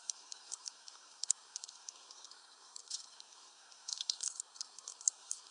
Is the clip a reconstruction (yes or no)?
yes